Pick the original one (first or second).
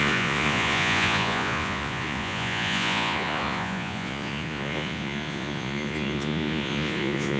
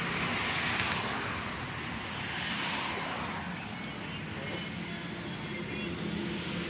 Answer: second